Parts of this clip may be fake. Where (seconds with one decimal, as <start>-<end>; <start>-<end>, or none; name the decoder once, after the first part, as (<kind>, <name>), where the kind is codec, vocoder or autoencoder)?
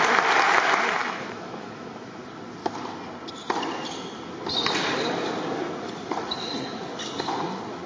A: 1.0-2.2 (autoencoder, DAC-VAE)